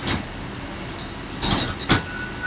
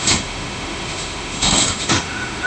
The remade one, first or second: second